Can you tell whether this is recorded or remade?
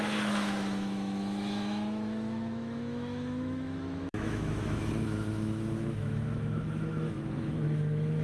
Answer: remade